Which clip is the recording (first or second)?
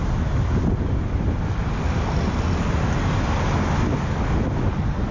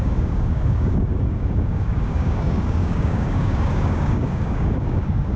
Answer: first